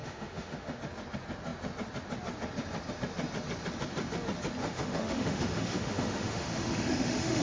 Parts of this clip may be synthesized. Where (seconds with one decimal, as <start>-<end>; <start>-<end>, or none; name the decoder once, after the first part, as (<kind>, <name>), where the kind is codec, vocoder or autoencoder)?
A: 0.0-0.8 (autoencoder, DAC-VAE); 4.6-7.4